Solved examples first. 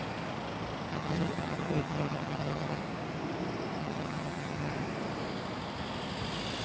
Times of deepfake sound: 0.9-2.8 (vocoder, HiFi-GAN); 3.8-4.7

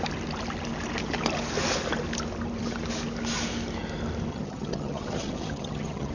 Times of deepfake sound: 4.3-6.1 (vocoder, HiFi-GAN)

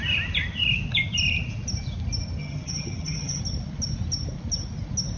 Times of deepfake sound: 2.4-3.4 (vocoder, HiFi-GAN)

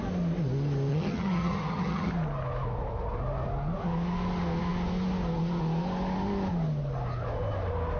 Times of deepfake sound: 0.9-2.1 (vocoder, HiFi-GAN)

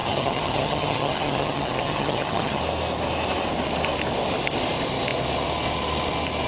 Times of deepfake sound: 0.0-2.6 (vocoder, HiFi-GAN)